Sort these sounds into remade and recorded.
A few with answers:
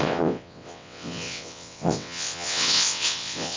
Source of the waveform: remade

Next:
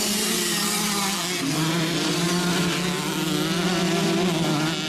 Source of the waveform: recorded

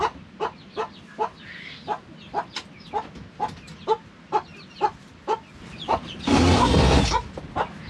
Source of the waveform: recorded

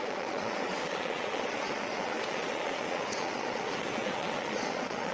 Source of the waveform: remade